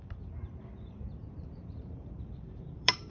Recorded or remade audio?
remade